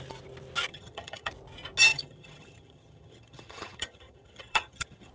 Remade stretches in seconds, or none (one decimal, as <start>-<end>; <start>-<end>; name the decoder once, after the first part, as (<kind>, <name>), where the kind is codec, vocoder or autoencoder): 0.7-1.3 (vocoder, HiFi-GAN); 1.9-5.1